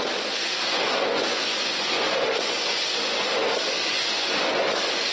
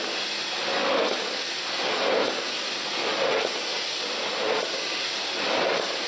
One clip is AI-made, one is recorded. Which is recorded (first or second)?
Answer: second